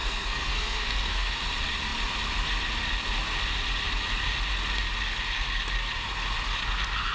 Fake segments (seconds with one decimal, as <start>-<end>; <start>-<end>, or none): 0.0-1.3

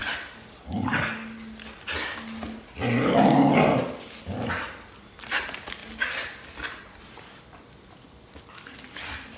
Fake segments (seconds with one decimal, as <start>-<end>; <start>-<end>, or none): none

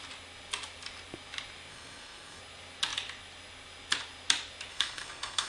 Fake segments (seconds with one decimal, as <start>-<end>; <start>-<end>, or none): 1.7-2.4; 4.7-5.5

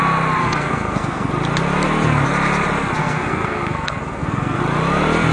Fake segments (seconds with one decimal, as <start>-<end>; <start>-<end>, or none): 0.4-1.3; 3.0-4.6